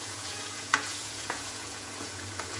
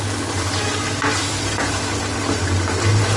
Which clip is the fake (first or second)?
first